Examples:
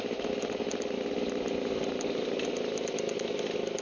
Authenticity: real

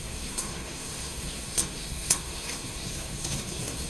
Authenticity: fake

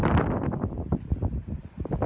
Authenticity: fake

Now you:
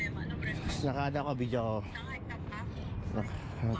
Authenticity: real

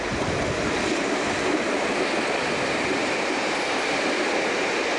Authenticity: real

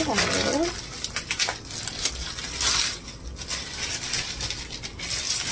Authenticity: real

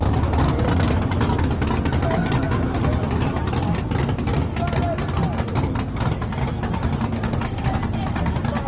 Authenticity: real